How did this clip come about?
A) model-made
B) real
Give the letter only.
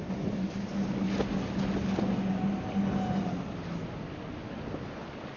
B